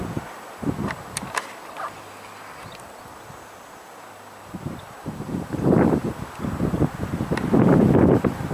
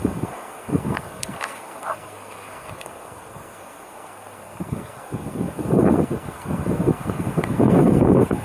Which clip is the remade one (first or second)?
second